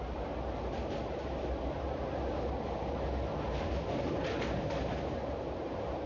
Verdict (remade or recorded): recorded